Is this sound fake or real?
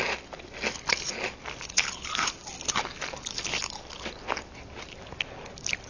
real